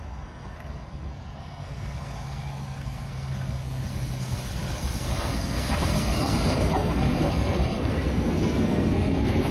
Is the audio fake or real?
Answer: fake